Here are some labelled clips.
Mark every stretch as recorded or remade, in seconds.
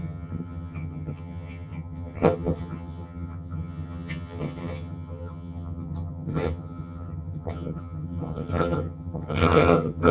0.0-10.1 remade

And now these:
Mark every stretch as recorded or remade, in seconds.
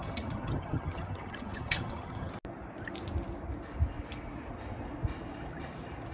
0.0-2.3 remade; 2.3-6.1 recorded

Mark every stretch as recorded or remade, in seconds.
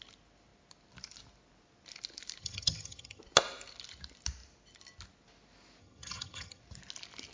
0.0-2.4 recorded; 2.4-3.2 remade; 3.2-5.8 recorded; 5.8-6.6 remade; 6.6-7.3 recorded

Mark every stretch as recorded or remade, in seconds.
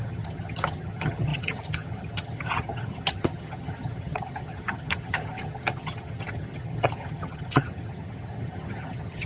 0.0-9.3 remade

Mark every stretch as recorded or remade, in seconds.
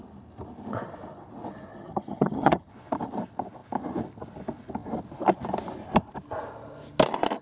0.0-1.7 recorded; 1.7-2.7 remade; 2.7-7.4 recorded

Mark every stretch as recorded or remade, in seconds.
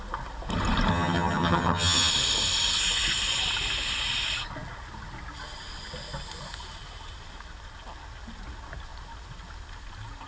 0.0-0.9 recorded; 0.9-2.1 remade; 2.1-10.3 recorded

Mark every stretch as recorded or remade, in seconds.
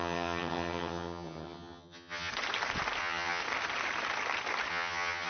0.0-2.3 remade; 2.3-3.0 recorded; 3.0-3.4 remade; 3.4-4.7 recorded; 4.7-5.3 remade